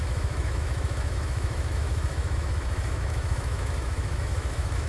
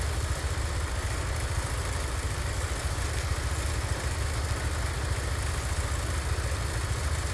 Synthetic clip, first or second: first